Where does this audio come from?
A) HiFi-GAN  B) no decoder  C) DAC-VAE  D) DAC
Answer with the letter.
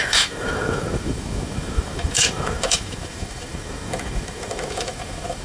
C